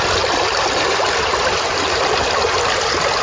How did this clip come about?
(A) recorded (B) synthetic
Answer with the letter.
B